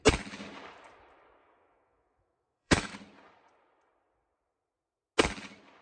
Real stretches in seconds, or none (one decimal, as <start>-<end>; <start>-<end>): 0.0-1.4; 2.9-5.8